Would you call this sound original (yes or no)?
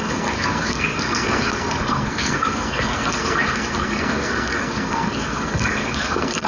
no